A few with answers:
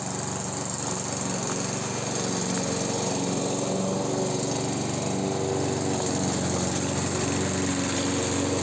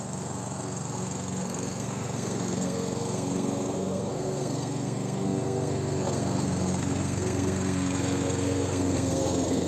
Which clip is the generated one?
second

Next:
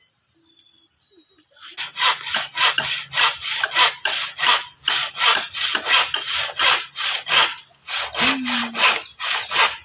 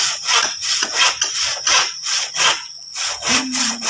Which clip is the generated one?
second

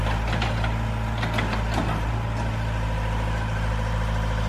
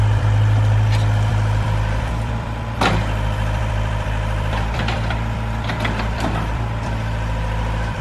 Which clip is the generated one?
second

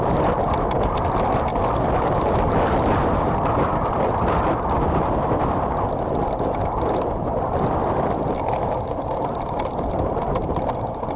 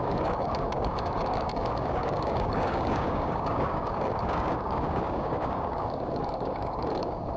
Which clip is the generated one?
second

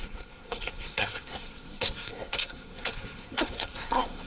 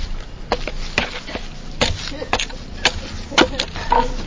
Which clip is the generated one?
first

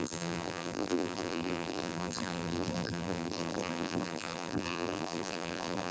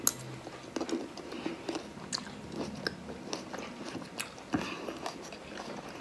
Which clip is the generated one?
first